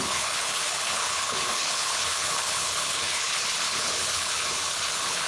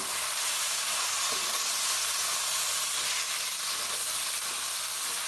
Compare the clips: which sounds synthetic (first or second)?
first